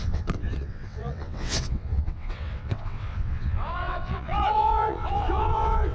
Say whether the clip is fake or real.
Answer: fake